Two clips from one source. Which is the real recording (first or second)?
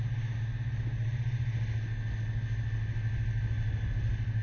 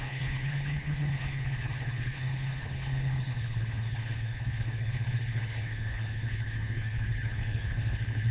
first